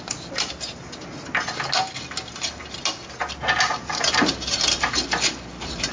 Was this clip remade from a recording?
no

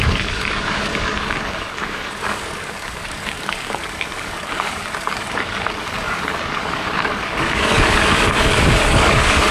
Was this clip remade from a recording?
yes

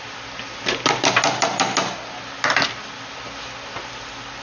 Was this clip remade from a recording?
no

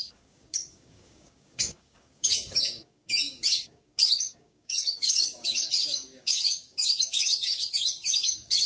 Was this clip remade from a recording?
yes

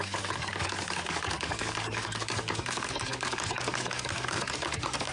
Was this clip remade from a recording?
yes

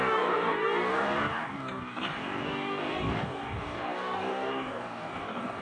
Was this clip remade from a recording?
yes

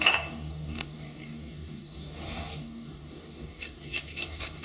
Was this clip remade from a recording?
yes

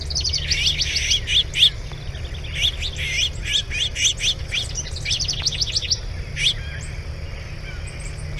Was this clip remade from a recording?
no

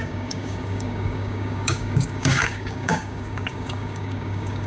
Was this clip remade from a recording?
yes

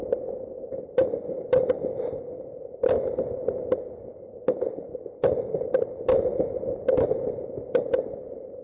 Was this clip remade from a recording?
no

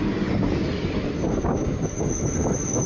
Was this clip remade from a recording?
no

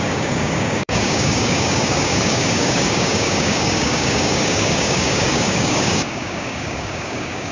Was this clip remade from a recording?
yes